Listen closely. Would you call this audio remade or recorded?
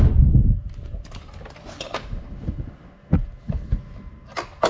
recorded